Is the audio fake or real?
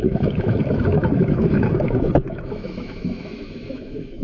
fake